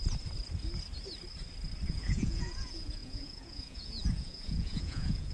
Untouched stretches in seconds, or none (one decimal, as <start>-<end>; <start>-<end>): 0.0-1.9